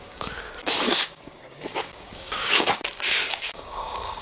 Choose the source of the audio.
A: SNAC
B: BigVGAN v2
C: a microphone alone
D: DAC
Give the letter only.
D